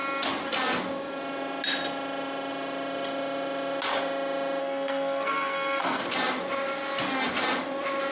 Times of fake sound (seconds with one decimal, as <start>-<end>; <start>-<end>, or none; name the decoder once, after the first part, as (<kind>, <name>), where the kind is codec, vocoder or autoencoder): 4.6-6.0 (codec, SNAC)